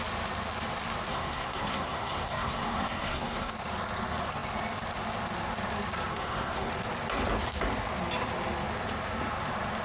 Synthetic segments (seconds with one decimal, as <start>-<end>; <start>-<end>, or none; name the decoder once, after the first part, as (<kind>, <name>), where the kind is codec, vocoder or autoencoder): 1.1-3.5 (codec, SNAC); 6.1-6.7